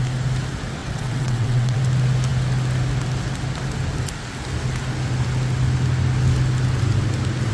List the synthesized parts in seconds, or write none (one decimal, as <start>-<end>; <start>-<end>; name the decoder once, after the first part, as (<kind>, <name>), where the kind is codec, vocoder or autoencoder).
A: 0.8-1.8 (vocoder, WaveNeXt)